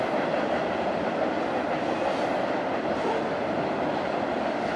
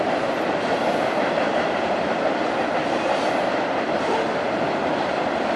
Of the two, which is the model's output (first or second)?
second